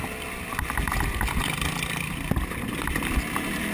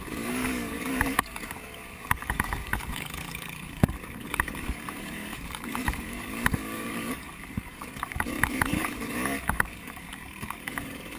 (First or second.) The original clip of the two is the first